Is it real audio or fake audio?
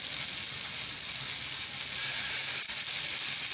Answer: real